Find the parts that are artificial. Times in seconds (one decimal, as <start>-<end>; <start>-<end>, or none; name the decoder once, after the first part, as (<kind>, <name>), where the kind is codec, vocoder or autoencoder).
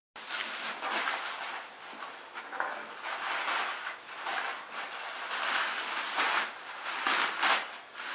none